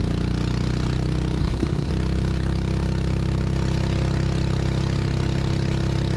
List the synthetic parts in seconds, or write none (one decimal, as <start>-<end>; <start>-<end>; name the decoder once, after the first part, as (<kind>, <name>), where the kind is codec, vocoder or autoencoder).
1.4-1.9 (codec, SNAC)